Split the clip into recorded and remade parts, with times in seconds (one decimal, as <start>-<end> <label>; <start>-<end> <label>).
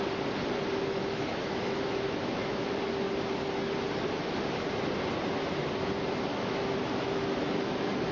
0.0-1.0 recorded; 1.0-2.6 remade; 2.6-6.3 recorded; 6.3-8.1 remade